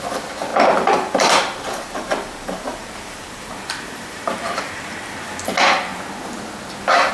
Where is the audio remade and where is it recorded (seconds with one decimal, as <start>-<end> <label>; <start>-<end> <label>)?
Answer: 0.0-0.5 recorded; 0.5-4.8 remade; 4.8-7.1 recorded